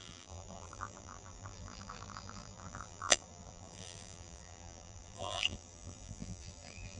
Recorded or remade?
remade